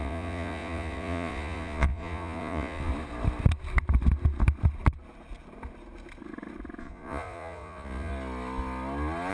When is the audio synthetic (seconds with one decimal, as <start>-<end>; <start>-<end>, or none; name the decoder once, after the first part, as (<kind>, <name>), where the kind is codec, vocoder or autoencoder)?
0.0-2.9 (vocoder, Vocos); 6.8-8.1